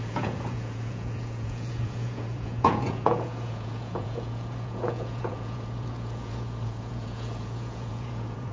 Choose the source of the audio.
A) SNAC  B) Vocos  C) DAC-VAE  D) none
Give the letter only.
B